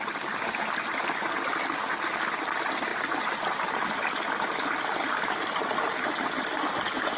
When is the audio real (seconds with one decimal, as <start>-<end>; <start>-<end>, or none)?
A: 0.0-7.2